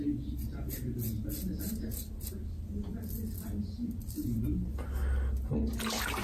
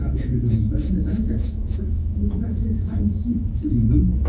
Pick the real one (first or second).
first